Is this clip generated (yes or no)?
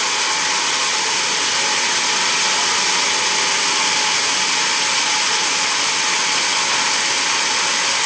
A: no